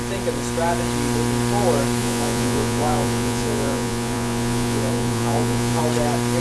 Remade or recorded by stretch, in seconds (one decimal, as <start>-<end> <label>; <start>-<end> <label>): 0.0-2.0 recorded; 2.0-5.8 remade; 5.8-6.4 recorded